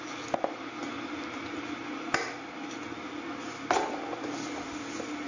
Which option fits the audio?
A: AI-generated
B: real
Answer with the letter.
B